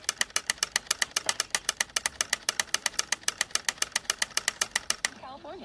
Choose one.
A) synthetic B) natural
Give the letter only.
B